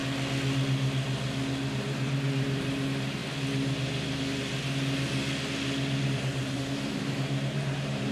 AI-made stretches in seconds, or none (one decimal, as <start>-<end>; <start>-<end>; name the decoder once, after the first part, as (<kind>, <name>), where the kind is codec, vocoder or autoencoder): 1.7-3.2 (vocoder, BigVGAN v2); 6.1-8.1